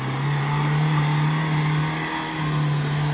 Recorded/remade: recorded